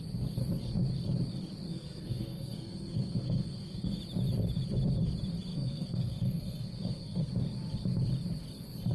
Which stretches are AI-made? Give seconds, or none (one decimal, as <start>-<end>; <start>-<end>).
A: 1.7-4.0; 5.5-7.3